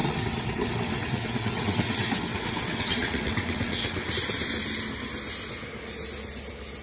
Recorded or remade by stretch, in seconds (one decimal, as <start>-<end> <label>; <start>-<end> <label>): 0.0-4.1 remade; 4.1-6.8 recorded